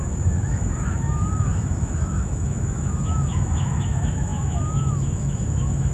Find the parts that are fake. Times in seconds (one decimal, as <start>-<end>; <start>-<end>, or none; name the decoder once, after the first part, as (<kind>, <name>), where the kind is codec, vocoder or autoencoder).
0.0-5.9 (autoencoder, DAC-VAE)